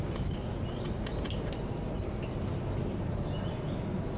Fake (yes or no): no